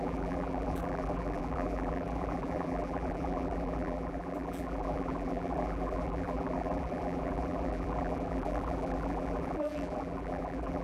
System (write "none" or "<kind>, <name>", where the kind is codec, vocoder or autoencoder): vocoder, BigVGAN v2